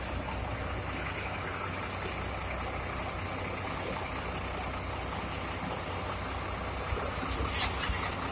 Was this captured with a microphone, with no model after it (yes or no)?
yes